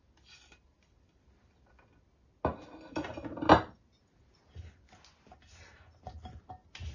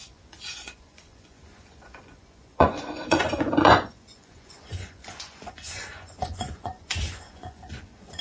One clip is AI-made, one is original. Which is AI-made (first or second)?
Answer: second